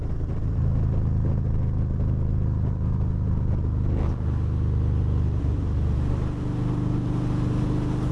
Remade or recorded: recorded